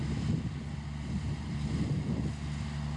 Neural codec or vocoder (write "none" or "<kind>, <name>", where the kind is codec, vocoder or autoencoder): none